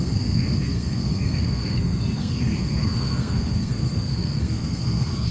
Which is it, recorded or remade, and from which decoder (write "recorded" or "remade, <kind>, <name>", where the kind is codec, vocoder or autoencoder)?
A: remade, codec, SNAC